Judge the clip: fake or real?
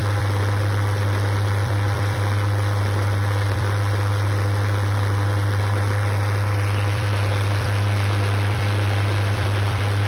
fake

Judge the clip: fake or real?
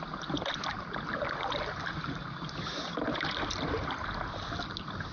real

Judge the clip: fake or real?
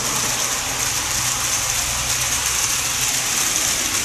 real